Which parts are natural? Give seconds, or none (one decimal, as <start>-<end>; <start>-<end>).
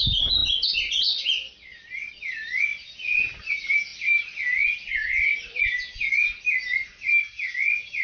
0.0-8.0